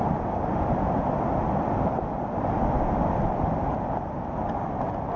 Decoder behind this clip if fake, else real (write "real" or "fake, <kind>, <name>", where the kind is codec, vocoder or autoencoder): real